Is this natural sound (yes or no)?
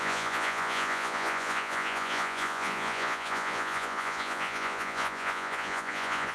no